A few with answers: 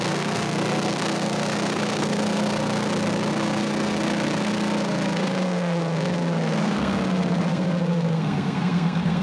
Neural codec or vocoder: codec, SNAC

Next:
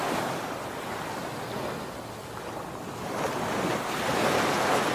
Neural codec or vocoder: none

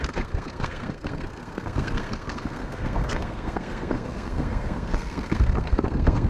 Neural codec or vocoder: codec, SNAC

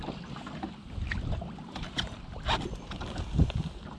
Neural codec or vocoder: none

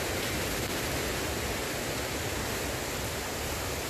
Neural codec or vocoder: none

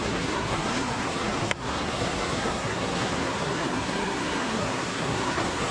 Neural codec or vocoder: codec, SNAC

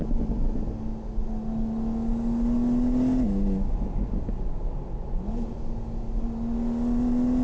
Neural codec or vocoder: none